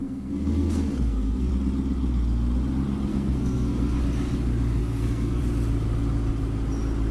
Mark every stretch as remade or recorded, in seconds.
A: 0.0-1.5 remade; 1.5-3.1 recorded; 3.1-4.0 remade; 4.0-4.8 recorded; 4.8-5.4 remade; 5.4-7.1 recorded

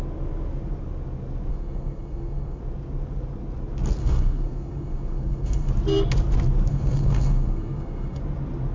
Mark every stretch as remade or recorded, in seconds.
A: 0.0-1.5 recorded; 1.5-2.6 remade; 2.6-4.0 recorded; 4.0-5.7 remade; 5.7-6.7 recorded; 6.7-8.2 remade; 8.2-8.7 recorded

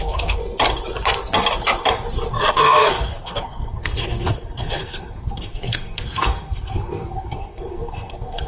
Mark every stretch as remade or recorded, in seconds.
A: 0.0-0.4 remade; 0.4-2.4 recorded; 2.4-8.5 remade

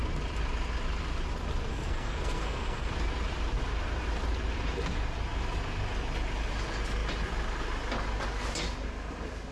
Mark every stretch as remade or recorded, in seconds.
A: 0.0-1.7 recorded; 1.7-2.9 remade; 2.9-9.5 recorded

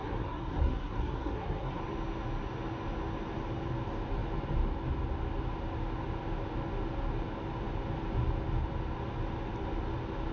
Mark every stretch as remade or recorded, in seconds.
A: 0.0-1.8 remade; 1.8-10.3 recorded

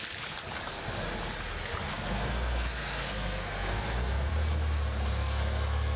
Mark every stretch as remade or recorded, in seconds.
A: 0.0-1.9 recorded; 1.9-4.3 remade; 4.3-5.1 recorded; 5.1-6.0 remade